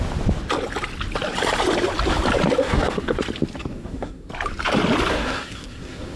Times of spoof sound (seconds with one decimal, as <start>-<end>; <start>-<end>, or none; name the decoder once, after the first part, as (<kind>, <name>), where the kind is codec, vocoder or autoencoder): 2.6-3.2 (codec, SNAC); 3.7-4.3; 5.1-6.2